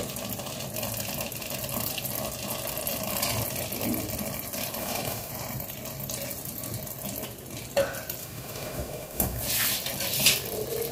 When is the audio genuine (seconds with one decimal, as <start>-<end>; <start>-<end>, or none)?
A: 0.0-4.8; 5.3-8.2; 9.4-10.9